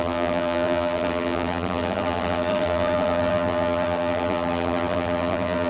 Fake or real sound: fake